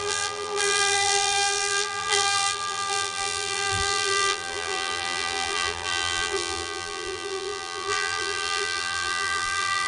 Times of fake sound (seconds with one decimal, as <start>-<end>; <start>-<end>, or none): 0.0-9.9